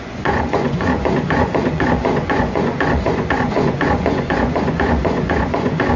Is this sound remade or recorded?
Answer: remade